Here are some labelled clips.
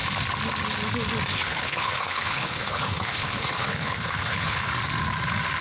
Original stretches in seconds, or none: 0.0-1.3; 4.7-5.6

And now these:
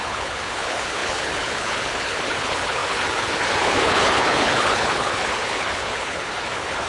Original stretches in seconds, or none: none

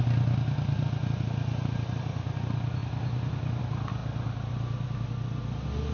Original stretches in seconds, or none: 0.0-5.9

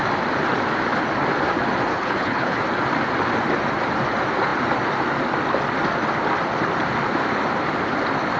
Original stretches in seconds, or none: 0.0-1.9; 2.6-8.4

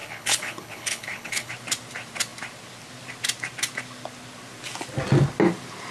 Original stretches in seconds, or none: 1.5-5.9

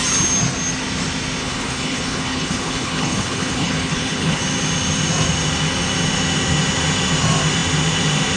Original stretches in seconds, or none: 0.0-1.4; 4.4-8.4